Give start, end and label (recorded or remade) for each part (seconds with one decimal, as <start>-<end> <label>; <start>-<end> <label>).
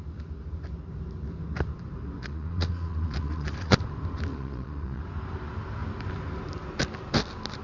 0.0-2.2 recorded; 2.2-3.8 remade; 3.8-4.3 recorded; 4.3-5.0 remade; 5.0-7.6 recorded